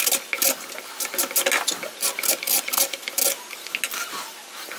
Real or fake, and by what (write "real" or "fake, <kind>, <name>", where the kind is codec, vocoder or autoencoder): real